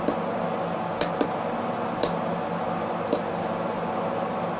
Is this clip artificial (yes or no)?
no